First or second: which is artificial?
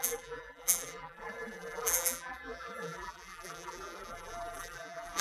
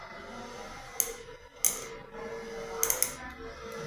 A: first